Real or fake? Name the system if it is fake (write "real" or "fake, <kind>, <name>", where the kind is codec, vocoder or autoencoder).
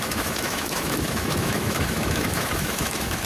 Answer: fake, autoencoder, DAC-VAE